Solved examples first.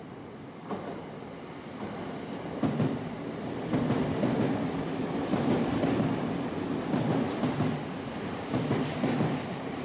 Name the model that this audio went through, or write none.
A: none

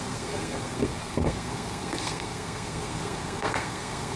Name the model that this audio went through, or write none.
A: codec, SNAC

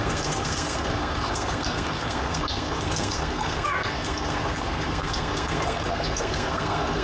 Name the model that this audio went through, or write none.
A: codec, SNAC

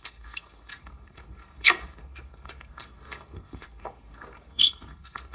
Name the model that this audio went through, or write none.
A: codec, SNAC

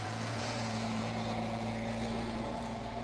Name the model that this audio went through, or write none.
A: vocoder, Vocos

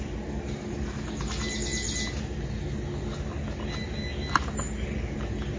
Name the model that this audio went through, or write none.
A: none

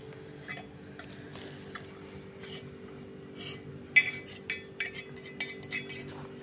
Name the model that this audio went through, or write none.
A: none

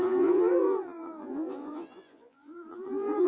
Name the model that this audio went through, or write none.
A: vocoder, Vocos